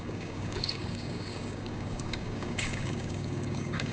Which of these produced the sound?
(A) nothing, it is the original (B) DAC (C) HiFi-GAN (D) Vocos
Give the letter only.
B